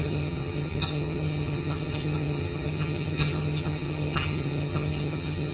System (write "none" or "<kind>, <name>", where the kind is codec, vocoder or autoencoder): vocoder, HiFi-GAN